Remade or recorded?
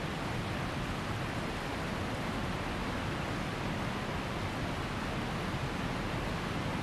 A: recorded